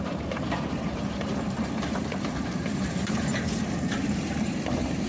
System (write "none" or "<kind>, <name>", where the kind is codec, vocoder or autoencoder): vocoder, BigVGAN v2